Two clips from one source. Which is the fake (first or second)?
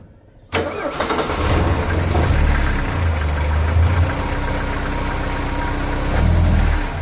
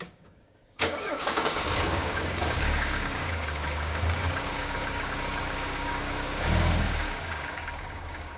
second